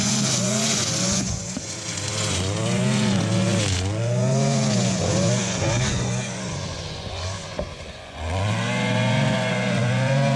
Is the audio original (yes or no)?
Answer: no